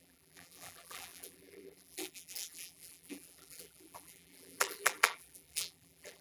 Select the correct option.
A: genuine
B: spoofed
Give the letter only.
B